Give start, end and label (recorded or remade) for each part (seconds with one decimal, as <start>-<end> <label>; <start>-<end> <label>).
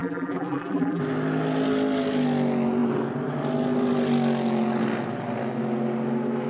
0.0-1.0 remade; 1.0-6.5 recorded